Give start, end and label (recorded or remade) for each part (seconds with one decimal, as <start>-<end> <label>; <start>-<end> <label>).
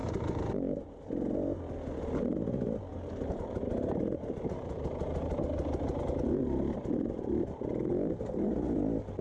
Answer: 0.0-0.5 remade; 0.5-2.9 recorded; 2.9-6.4 remade; 6.4-9.2 recorded